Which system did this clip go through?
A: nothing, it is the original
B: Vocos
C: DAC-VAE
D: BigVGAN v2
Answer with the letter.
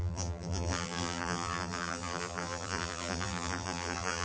D